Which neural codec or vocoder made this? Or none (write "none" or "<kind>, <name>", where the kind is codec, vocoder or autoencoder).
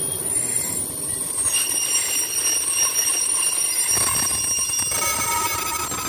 none